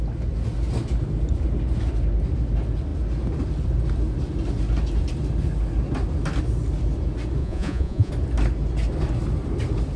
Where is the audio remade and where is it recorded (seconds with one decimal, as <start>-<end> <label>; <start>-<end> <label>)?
0.0-7.4 recorded; 7.4-8.1 remade; 8.1-10.0 recorded